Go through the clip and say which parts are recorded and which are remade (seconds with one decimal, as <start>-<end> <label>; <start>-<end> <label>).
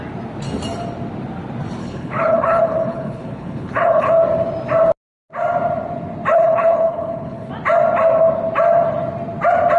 0.0-1.8 recorded; 1.8-4.2 remade; 4.2-6.3 recorded; 6.3-7.5 remade; 7.5-9.8 recorded